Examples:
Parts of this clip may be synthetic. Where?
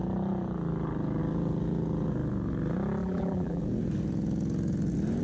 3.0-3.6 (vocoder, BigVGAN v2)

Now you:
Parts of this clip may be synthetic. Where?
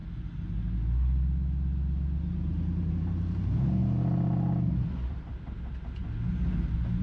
2.9-3.8 (vocoder, BigVGAN v2); 5.1-6.0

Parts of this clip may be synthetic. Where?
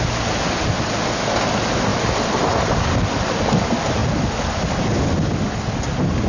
none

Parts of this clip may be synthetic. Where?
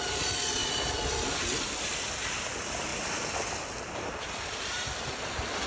0.6-2.5 (vocoder, BigVGAN v2); 2.9-5.0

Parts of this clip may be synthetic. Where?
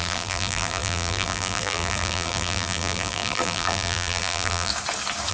0.0-4.7 (vocoder, BigVGAN v2)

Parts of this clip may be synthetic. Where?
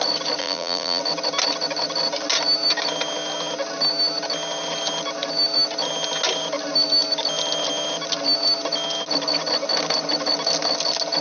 0.4-1.0 (vocoder, BigVGAN v2)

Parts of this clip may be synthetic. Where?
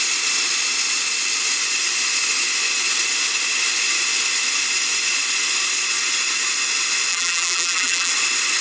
7.1-8.1 (vocoder, BigVGAN v2)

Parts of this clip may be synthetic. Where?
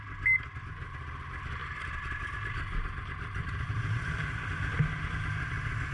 1.6-5.1 (vocoder, BigVGAN v2)